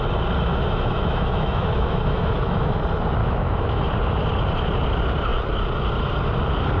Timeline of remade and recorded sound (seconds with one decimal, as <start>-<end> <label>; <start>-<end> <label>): 0.0-0.5 recorded; 0.5-2.8 remade; 2.8-3.2 recorded; 3.2-3.8 remade; 3.8-6.8 recorded